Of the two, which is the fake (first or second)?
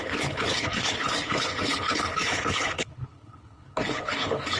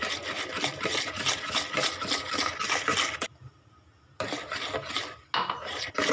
first